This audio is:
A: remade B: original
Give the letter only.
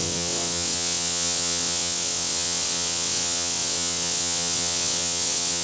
A